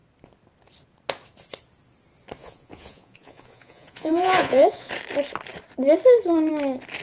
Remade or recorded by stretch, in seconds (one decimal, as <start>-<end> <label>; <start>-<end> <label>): 0.0-2.4 recorded; 2.4-4.9 remade; 4.9-7.0 recorded